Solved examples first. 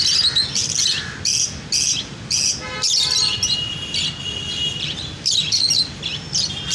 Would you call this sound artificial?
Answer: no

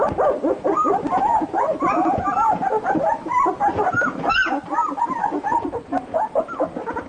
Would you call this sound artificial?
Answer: no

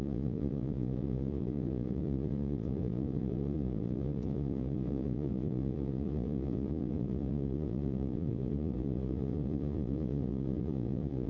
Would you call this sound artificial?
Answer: yes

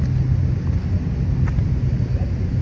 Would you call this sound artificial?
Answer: no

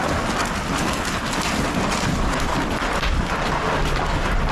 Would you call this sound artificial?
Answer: no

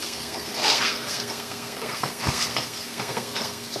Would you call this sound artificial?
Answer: yes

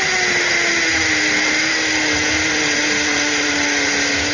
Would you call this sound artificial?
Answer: no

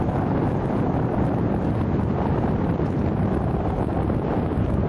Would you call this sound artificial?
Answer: no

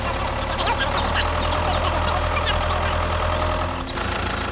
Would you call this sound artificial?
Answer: no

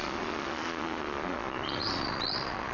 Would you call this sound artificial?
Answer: yes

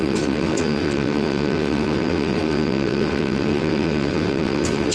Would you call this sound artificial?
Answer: yes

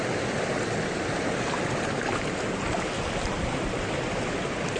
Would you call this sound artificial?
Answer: no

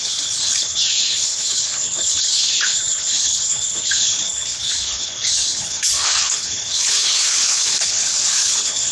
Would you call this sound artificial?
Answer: yes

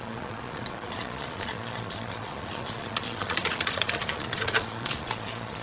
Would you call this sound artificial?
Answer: yes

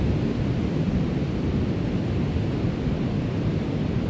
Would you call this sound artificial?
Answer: no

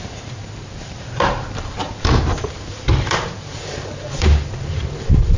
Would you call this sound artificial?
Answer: yes